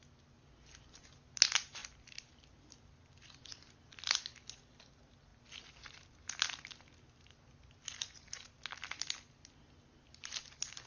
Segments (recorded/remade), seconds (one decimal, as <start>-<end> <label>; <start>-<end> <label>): 0.0-10.9 recorded